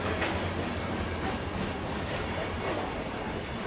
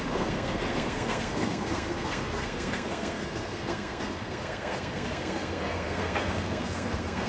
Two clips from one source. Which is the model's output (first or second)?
second